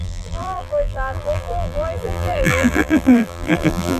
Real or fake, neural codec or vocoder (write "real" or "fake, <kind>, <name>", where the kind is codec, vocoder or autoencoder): fake, vocoder, BigVGAN v2